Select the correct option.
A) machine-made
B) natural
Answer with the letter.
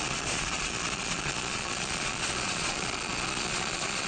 A